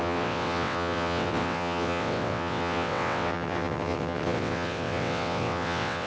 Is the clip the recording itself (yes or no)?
no